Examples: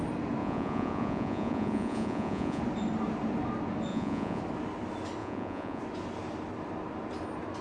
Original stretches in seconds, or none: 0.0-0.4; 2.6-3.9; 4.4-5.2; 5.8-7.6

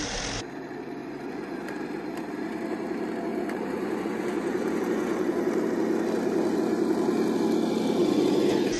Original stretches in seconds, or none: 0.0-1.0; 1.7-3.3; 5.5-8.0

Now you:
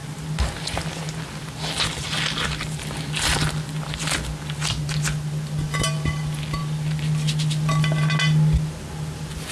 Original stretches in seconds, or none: 0.0-9.5

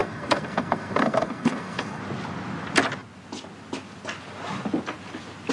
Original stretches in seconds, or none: 2.0-5.5

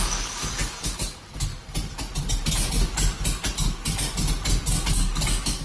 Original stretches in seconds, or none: 1.5-4.9